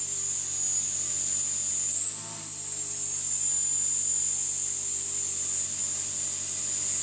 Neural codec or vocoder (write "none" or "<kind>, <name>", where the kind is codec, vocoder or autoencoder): none